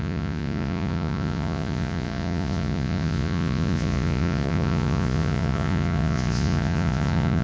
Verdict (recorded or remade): remade